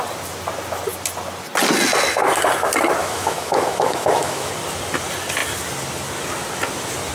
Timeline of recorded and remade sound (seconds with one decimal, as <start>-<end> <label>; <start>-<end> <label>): 0.0-3.0 recorded; 3.0-4.5 remade; 4.5-7.1 recorded